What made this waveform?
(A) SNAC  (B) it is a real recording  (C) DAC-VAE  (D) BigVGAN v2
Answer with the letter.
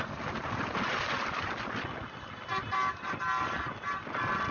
B